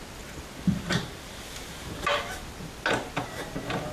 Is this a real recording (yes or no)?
yes